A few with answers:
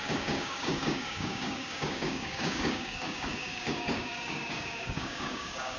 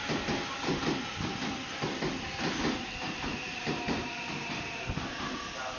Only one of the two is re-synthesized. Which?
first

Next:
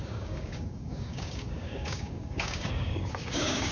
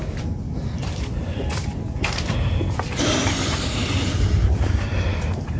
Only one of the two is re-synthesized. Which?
first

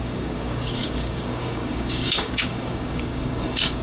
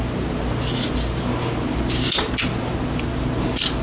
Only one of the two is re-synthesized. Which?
first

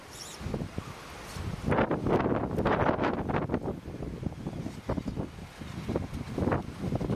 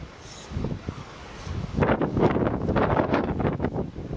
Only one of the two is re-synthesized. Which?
second